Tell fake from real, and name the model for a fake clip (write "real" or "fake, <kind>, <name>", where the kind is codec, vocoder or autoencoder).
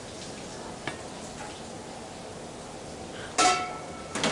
real